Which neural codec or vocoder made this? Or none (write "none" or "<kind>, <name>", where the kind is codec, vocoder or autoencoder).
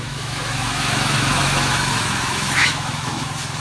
autoencoder, DAC-VAE